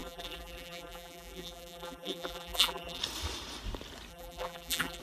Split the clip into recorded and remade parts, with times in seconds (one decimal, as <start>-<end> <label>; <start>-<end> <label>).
0.0-3.0 remade; 3.0-4.1 recorded; 4.1-5.0 remade